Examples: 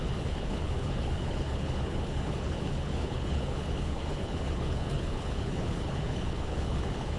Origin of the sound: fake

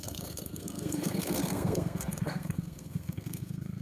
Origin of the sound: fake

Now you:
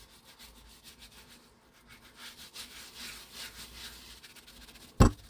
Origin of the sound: real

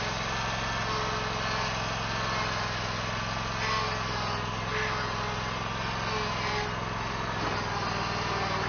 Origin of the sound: real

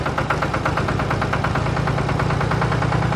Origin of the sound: real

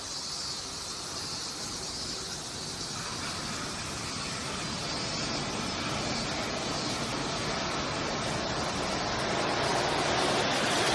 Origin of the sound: real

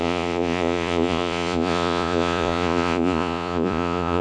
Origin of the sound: fake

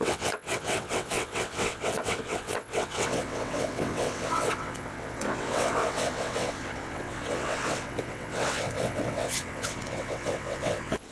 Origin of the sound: fake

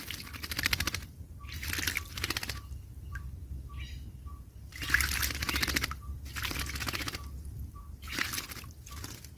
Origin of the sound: real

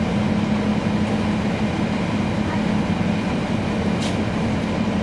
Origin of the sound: real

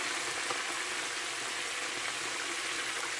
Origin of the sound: real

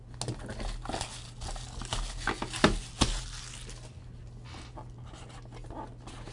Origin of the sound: real